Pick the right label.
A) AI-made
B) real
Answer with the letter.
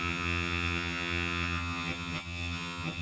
A